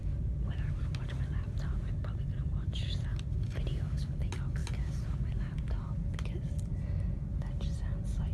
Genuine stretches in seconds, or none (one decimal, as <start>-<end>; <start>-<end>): 0.0-8.3